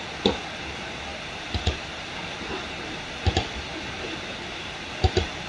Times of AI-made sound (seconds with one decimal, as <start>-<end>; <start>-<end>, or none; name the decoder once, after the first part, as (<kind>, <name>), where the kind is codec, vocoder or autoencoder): 1.1-3.1 (vocoder, BigVGAN v2); 3.7-4.9